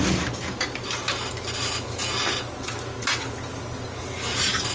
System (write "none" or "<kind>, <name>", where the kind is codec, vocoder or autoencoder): none